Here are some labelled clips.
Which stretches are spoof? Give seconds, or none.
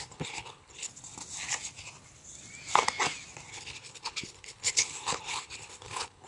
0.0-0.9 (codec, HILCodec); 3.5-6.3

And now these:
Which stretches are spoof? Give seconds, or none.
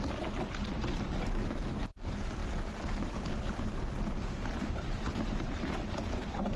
none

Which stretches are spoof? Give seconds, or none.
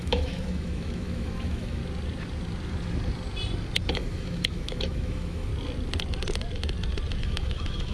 0.0-1.8 (autoencoder, DAC-VAE); 3.9-5.5; 7.2-7.9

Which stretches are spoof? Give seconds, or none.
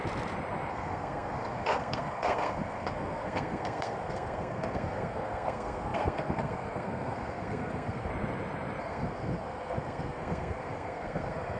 0.7-8.1 (codec, SNAC); 8.8-11.6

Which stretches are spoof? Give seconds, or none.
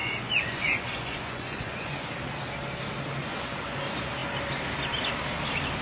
0.0-2.1 (vocoder, Vocos); 3.2-3.8